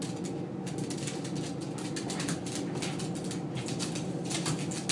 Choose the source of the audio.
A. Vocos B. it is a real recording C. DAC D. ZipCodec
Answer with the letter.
B